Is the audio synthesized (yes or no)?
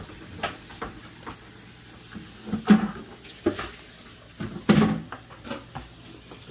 no